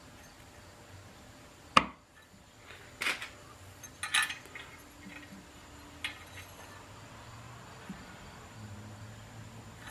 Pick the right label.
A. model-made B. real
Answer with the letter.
B